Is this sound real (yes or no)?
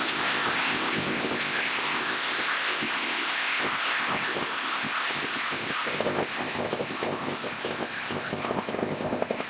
no